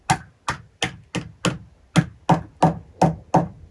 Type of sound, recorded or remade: recorded